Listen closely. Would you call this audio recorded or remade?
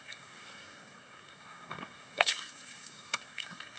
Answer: remade